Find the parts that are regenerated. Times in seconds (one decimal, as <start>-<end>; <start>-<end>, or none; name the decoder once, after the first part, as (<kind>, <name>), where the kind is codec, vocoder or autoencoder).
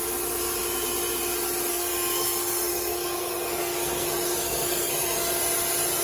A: 1.7-5.3 (codec, SNAC)